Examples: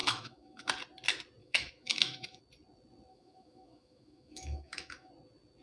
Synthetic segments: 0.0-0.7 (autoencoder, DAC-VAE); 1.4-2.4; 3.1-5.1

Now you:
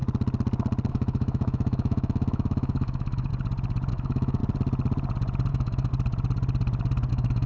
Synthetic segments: 0.9-3.3 (autoencoder, DAC-VAE); 3.9-4.4; 5.5-5.9; 7.1-7.5